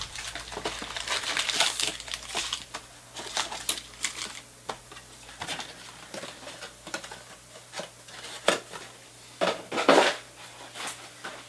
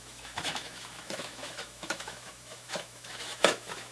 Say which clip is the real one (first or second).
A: first